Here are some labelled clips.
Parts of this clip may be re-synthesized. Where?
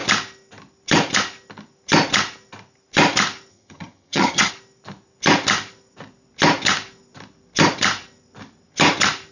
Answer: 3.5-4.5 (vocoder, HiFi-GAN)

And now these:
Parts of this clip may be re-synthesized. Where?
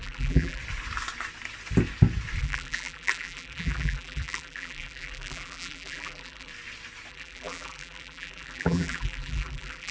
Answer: 0.0-0.6 (vocoder, BigVGAN v2); 2.4-6.5; 7.1-9.9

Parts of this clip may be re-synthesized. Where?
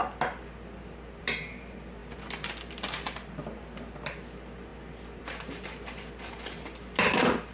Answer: 1.2-2.0 (vocoder, BigVGAN v2); 2.7-7.5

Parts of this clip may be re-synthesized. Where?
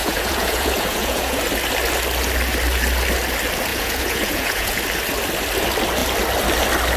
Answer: 0.0-1.4 (vocoder, Vocos); 3.7-4.8